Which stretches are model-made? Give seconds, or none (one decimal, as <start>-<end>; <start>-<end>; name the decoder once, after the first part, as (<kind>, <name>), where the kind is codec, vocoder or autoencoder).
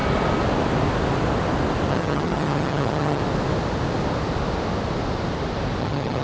1.9-3.2 (vocoder, HiFi-GAN); 5.8-6.2